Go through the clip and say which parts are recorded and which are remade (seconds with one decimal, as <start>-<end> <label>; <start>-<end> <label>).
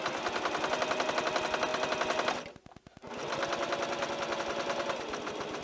0.0-5.6 recorded